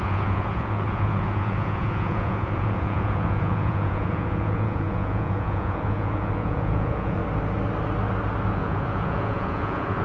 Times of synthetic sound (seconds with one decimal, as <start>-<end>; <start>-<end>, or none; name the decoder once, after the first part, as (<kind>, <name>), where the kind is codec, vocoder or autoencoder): 0.0-7.2 (vocoder, Vocos); 8.5-10.0

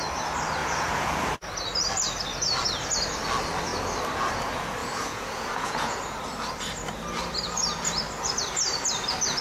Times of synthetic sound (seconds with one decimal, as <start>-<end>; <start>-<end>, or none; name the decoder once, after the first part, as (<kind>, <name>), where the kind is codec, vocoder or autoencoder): 0.6-1.3 (vocoder, Vocos); 4.8-6.0

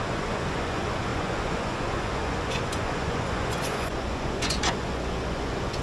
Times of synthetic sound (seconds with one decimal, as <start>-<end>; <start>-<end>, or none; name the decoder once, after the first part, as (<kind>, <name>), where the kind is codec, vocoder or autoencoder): 0.0-5.8 (vocoder, Vocos)

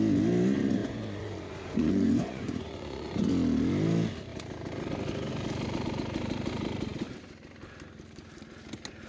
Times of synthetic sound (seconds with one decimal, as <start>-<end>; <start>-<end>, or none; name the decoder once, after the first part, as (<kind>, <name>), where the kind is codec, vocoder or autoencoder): 0.8-3.3 (vocoder, Vocos)

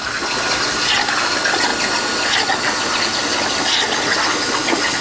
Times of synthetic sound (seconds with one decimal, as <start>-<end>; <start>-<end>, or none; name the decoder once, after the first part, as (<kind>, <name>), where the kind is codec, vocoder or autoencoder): none

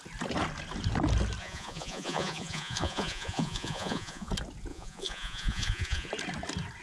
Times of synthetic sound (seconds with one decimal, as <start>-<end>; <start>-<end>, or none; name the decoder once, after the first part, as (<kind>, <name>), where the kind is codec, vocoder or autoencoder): 1.4-4.3 (vocoder, Vocos); 4.7-6.1

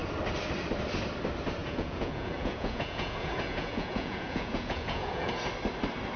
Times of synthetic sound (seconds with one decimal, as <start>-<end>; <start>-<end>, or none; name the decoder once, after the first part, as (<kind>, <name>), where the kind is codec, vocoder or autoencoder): 1.6-5.3 (vocoder, Vocos)